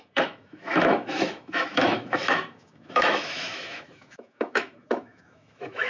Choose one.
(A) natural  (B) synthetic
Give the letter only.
B